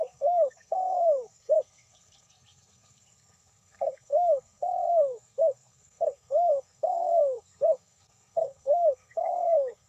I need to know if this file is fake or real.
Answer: fake